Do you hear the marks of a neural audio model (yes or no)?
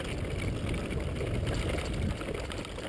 no